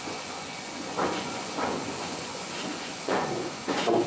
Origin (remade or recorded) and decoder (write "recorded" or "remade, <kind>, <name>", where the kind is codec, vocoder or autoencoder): remade, vocoder, Vocos